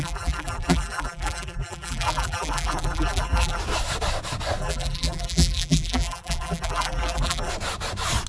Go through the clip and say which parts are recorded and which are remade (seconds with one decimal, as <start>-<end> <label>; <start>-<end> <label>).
0.0-3.6 remade; 3.6-4.6 recorded; 4.6-7.5 remade; 7.5-8.3 recorded